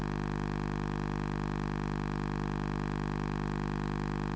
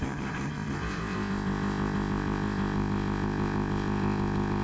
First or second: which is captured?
first